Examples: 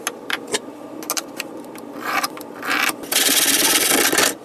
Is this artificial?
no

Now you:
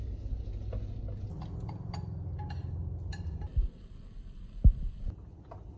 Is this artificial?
no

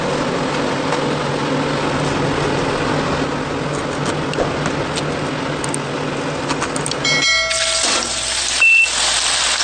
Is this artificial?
no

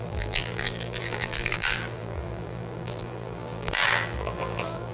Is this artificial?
yes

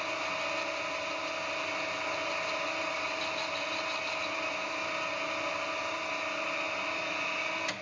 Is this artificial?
no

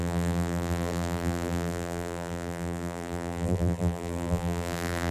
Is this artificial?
yes